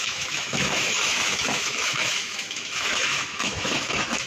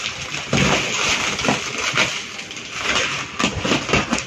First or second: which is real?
second